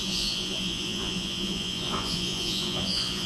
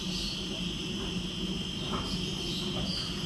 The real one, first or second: second